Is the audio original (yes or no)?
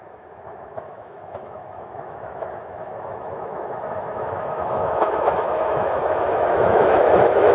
no